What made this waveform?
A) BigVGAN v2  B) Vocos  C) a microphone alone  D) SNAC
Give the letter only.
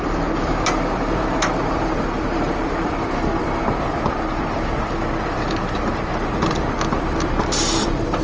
A